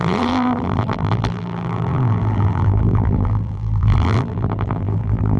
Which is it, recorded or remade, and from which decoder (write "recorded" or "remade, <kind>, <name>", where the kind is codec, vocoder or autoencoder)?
remade, vocoder, BigVGAN v2